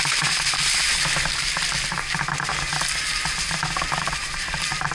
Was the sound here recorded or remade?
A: recorded